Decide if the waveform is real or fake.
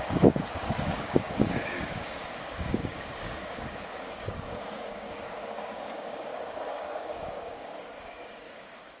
fake